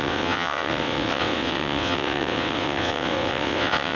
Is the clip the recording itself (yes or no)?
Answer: no